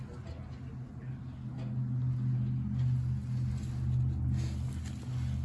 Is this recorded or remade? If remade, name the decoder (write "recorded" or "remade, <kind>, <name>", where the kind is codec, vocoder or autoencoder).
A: recorded